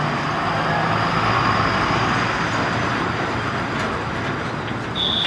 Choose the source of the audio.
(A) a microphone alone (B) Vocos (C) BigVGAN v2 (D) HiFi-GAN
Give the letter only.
A